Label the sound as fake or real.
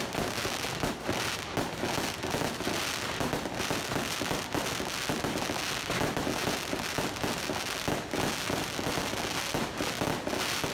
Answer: real